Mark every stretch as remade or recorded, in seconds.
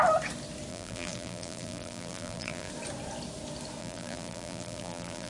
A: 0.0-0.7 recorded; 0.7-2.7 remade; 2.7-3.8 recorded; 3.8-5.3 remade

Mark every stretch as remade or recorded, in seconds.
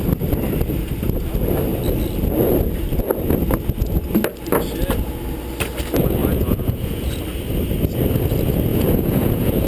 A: 0.0-6.2 recorded; 6.2-7.2 remade; 7.2-8.7 recorded; 8.7-9.7 remade